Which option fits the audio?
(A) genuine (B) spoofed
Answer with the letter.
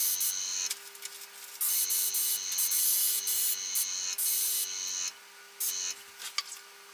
A